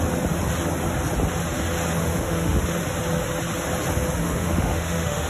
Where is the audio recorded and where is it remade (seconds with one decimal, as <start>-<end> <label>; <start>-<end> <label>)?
0.0-2.0 recorded; 2.0-2.6 remade; 2.6-4.2 recorded; 4.2-5.3 remade